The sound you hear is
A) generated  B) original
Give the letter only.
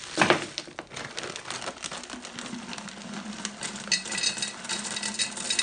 B